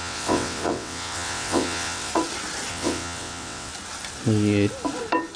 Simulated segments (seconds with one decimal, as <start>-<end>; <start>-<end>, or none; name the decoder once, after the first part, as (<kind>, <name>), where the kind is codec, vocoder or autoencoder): 0.0-2.1 (vocoder, WaveNeXt); 2.7-3.7